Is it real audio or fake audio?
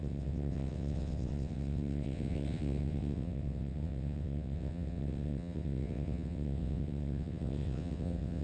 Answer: fake